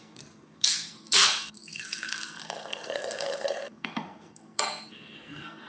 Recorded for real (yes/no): no